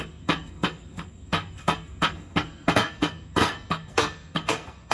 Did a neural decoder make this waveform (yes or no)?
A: yes